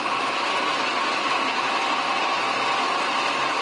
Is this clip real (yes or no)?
yes